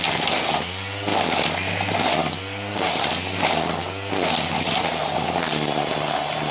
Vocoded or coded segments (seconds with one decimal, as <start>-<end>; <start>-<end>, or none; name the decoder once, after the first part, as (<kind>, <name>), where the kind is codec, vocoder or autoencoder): none